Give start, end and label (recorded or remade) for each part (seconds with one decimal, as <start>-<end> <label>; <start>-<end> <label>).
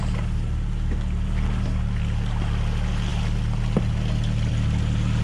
0.0-5.2 recorded